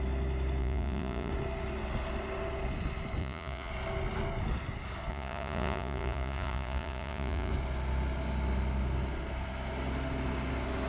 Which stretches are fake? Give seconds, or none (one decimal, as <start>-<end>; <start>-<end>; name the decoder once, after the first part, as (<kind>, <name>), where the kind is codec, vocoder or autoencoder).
0.6-1.3 (vocoder, Vocos); 3.2-3.7; 5.1-7.5